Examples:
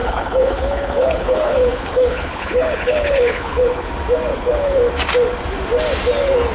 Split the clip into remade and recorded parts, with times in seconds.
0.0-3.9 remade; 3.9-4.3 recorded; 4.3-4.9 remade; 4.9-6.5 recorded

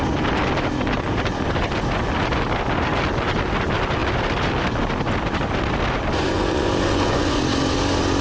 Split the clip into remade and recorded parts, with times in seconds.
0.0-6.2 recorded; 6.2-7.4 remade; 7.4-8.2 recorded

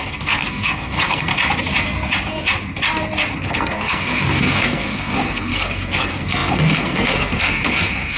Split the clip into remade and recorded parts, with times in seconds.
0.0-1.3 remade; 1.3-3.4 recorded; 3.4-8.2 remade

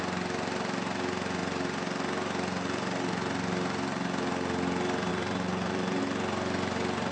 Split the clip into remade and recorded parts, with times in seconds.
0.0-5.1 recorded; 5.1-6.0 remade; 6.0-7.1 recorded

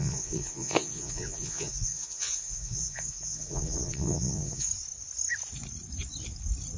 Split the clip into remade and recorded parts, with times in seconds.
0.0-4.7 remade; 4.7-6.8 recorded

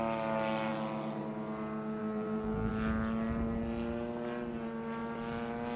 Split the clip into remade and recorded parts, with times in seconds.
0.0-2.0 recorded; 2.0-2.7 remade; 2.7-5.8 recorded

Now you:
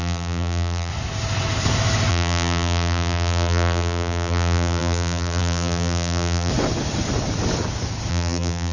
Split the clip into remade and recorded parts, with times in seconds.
0.0-0.9 remade; 0.9-2.1 recorded; 2.1-6.5 remade; 6.5-8.1 recorded; 8.1-8.7 remade

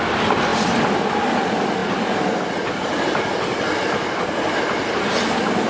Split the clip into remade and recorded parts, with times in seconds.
0.0-5.7 recorded